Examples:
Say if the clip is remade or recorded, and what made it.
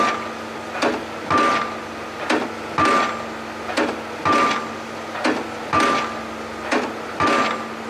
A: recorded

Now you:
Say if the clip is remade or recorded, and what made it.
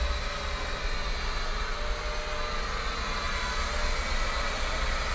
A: recorded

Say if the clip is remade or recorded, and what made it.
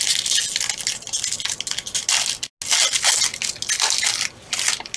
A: recorded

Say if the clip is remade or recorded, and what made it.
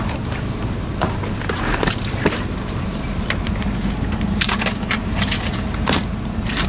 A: remade, vocoder, BigVGAN v2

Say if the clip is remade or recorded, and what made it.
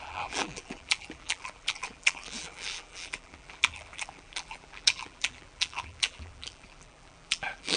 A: remade, vocoder, BigVGAN v2